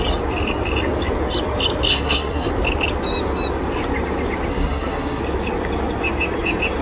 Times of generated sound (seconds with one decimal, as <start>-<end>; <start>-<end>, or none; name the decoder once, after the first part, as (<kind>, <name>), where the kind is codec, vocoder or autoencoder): 1.9-2.5 (codec, SNAC); 4.5-5.2